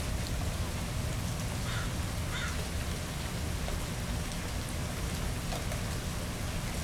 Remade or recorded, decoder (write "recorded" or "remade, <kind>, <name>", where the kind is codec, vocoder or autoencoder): recorded